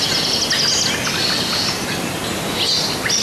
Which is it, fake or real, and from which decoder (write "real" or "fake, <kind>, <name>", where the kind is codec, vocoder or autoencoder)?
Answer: real